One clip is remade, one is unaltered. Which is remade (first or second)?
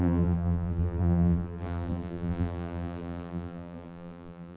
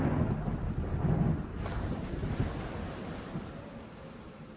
first